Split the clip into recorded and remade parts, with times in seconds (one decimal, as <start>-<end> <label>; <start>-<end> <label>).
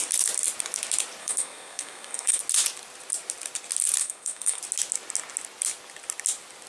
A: 0.0-1.2 recorded; 1.2-2.4 remade; 2.4-4.0 recorded; 4.0-4.6 remade; 4.6-6.7 recorded